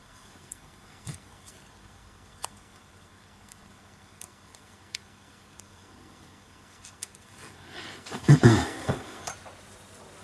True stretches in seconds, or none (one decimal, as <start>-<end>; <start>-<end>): 9.3-10.2